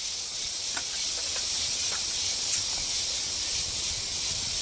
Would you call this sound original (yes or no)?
no